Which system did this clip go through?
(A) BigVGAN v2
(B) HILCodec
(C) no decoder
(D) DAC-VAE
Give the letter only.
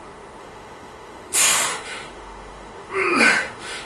D